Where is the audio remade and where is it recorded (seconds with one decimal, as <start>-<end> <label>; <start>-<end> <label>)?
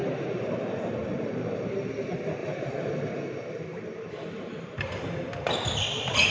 0.0-1.9 remade; 1.9-2.4 recorded; 2.4-5.0 remade; 5.0-6.3 recorded